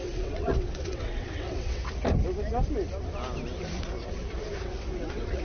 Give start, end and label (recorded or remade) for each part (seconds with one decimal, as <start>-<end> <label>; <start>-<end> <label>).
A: 0.0-1.8 remade; 1.8-4.6 recorded; 4.6-5.4 remade